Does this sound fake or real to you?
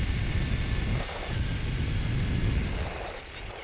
real